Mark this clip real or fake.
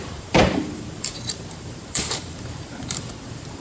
fake